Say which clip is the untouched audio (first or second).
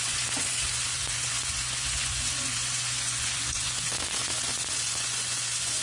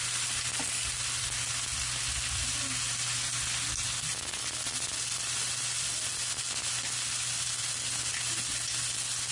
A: second